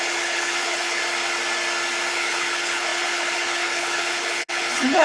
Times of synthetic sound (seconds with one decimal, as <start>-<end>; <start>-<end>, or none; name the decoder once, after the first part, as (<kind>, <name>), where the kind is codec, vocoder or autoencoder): 0.0-1.0 (codec, HILCodec); 2.1-5.0